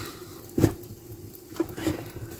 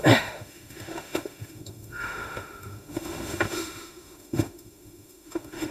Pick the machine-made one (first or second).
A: second